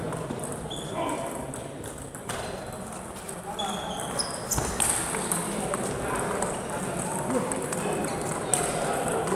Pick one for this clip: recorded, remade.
recorded